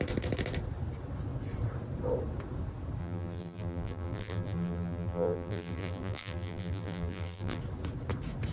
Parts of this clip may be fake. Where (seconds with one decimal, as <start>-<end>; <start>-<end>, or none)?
3.0-7.6